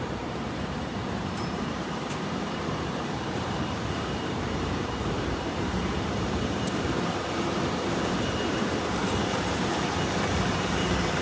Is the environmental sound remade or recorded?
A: remade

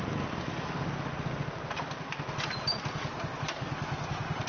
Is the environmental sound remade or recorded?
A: recorded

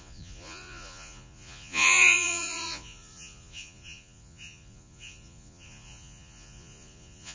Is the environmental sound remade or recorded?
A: remade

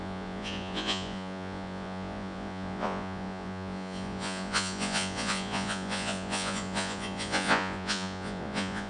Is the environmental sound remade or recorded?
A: remade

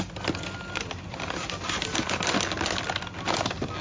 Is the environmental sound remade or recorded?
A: recorded